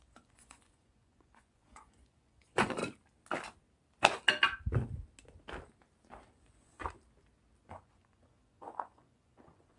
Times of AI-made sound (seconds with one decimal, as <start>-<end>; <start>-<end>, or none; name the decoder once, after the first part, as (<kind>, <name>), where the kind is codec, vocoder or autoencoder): 0.0-2.8 (vocoder, Vocos); 6.3-6.8; 7.6-9.8